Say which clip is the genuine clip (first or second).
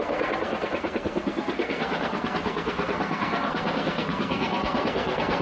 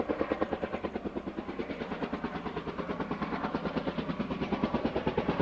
second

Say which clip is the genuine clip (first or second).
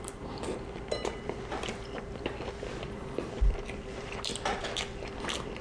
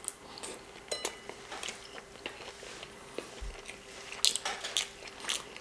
second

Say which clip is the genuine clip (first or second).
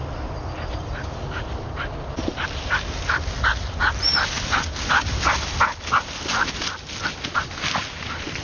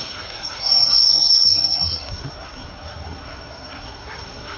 first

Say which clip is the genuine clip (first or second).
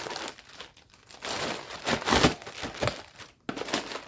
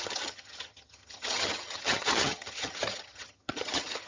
first